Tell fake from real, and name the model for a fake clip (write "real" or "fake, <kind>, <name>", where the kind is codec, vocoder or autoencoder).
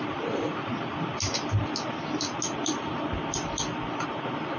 real